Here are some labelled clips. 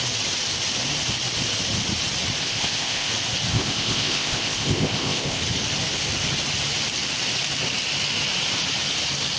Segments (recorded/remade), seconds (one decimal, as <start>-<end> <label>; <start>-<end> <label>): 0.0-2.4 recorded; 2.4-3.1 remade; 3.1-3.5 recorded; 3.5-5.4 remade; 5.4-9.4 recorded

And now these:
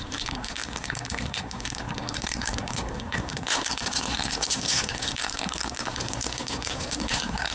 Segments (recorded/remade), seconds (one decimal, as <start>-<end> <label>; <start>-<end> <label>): 0.0-7.5 remade

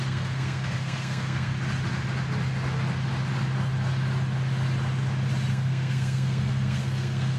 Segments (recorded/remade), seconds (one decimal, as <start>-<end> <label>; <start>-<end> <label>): 0.0-1.5 remade; 1.5-5.5 recorded; 5.5-7.4 remade

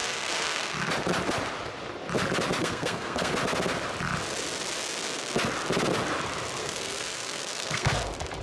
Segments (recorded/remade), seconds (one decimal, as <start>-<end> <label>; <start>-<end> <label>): 0.0-0.9 remade; 0.9-2.6 recorded; 2.6-3.3 remade; 3.3-6.6 recorded; 6.6-7.9 remade; 7.9-8.4 recorded

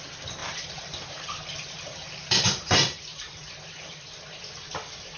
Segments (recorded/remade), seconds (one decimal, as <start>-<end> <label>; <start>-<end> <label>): 0.0-0.4 recorded; 0.4-3.5 remade; 3.5-5.2 recorded

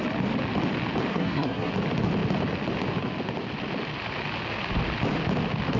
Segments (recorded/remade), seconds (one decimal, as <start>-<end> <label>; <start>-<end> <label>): 0.0-1.1 recorded; 1.1-1.7 remade; 1.7-5.8 recorded

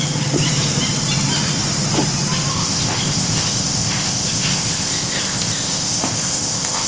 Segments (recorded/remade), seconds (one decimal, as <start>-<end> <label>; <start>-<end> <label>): 0.0-2.5 recorded; 2.5-6.9 remade